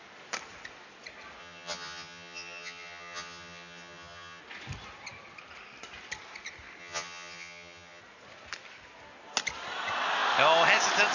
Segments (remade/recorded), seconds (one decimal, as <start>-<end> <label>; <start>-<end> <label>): 0.0-1.4 recorded; 1.4-4.4 remade; 4.4-6.8 recorded; 6.8-8.0 remade; 8.0-11.1 recorded